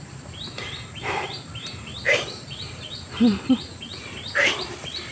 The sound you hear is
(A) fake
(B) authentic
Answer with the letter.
A